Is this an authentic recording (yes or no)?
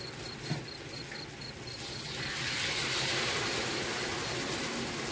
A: yes